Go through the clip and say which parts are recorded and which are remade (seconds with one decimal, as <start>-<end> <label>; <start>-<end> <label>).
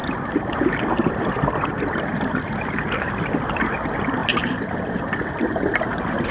0.0-3.3 remade; 3.3-6.3 recorded